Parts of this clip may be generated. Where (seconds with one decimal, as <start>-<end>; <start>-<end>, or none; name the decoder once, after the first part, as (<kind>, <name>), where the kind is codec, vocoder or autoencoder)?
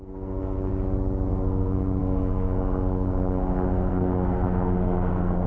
0.0-0.7 (codec, SNAC); 1.3-5.5